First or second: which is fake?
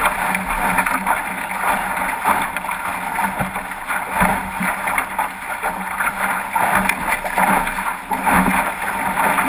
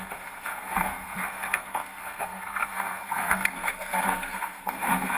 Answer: second